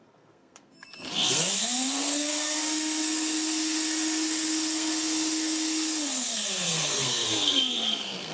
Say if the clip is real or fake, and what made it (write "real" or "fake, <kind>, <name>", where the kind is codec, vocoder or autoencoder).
fake, codec, SNAC